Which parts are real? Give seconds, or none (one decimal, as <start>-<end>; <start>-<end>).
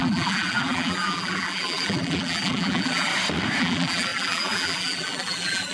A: 3.1-3.6